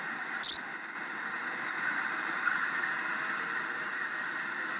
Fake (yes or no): no